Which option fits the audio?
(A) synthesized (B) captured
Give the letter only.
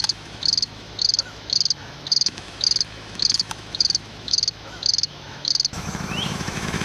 A